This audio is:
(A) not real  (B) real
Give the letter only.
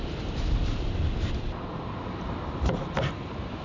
A